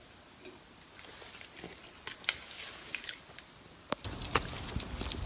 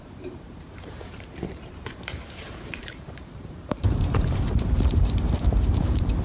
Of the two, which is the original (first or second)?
first